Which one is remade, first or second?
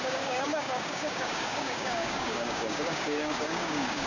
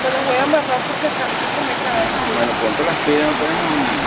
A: first